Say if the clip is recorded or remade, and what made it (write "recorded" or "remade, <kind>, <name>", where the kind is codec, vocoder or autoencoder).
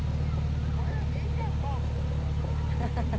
recorded